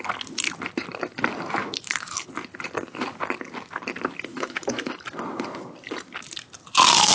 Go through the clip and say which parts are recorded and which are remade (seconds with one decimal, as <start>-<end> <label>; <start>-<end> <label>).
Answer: 0.0-1.6 recorded; 1.6-2.2 remade; 2.2-4.3 recorded; 4.3-4.9 remade; 4.9-7.1 recorded